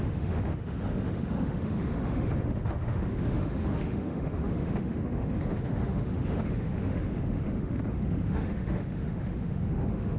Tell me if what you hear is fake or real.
fake